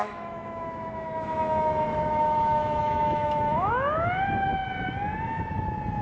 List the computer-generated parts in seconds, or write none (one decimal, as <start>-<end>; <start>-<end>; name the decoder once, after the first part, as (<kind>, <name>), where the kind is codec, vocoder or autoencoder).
0.0-4.5 (autoencoder, DAC-VAE)